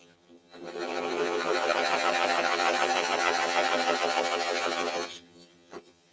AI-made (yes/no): yes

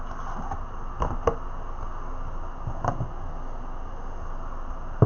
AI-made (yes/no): no